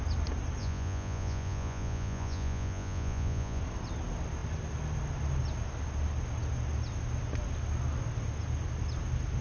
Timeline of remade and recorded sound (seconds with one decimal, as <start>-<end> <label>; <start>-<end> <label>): 0.0-0.6 recorded; 0.6-3.6 remade; 3.6-9.4 recorded